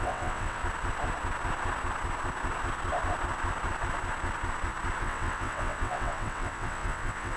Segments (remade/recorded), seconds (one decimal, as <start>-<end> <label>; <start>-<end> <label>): 0.0-0.6 remade; 0.6-5.0 recorded; 5.0-7.4 remade